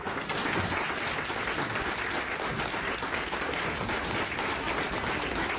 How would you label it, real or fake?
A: real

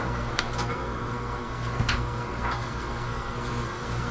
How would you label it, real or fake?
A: fake